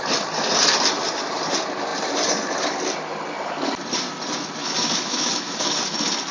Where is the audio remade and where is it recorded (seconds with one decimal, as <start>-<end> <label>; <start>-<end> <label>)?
0.0-4.6 recorded; 4.6-5.6 remade; 5.6-6.3 recorded